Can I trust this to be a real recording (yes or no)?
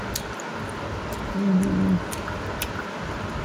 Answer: yes